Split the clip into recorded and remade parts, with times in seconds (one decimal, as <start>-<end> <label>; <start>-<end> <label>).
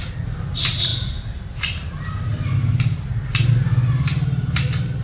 0.0-5.0 recorded